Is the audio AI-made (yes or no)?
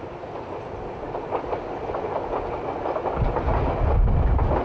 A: no